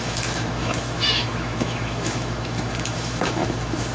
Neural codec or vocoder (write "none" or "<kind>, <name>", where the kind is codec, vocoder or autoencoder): autoencoder, DAC-VAE